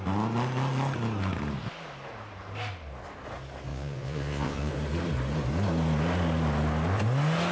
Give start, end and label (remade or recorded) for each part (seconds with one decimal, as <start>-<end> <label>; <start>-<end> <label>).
0.0-3.7 recorded; 3.7-4.7 remade; 4.7-7.5 recorded